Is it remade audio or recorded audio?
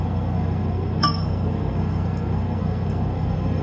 remade